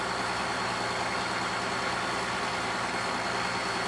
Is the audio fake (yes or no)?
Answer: no